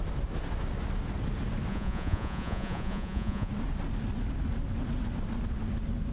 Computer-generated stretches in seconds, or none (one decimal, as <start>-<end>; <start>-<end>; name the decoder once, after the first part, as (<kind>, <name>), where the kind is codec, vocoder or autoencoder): 1.7-3.5 (vocoder, Vocos)